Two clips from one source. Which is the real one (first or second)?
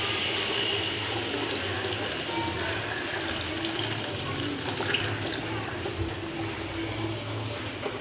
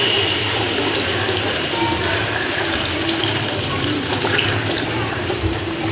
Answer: first